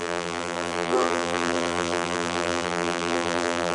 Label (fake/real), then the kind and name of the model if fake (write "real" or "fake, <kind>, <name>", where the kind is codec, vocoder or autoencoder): fake, vocoder, BigVGAN v2